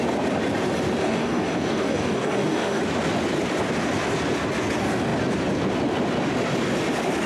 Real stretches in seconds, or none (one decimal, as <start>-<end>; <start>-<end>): 0.0-1.0; 2.8-7.3

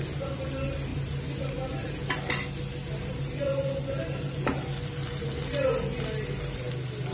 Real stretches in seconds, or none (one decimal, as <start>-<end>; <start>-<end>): 0.0-7.1

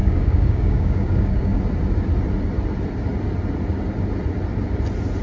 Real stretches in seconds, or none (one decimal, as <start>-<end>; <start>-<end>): 1.6-5.2

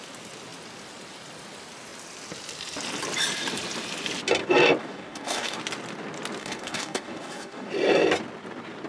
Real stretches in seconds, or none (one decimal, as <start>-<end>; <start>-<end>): 0.0-4.8; 5.6-6.4; 7.7-8.9